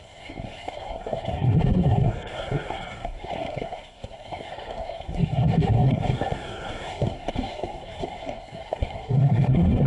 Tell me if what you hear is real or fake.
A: fake